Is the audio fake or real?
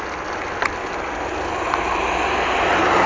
fake